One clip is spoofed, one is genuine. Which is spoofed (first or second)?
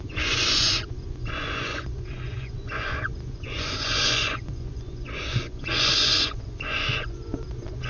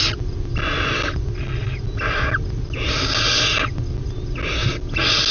first